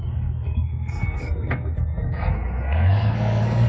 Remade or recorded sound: remade